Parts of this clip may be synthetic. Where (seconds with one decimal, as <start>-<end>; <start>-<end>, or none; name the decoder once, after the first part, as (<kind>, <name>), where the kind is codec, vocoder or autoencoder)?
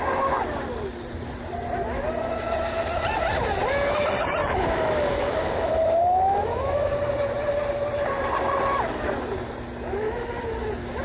4.4-6.9 (autoencoder, DAC-VAE)